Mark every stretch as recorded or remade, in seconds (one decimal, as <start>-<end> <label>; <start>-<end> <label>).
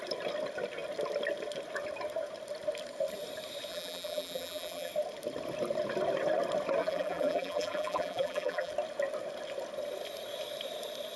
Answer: 0.0-3.7 recorded; 3.7-4.9 remade; 4.9-6.8 recorded; 6.8-8.7 remade; 8.7-11.2 recorded